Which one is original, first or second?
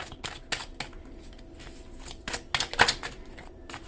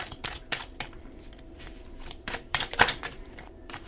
first